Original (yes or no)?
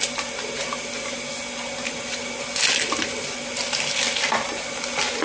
yes